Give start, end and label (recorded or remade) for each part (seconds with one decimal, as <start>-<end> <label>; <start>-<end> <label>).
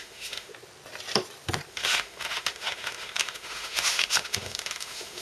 0.0-0.5 remade; 0.5-1.7 recorded; 1.7-5.2 remade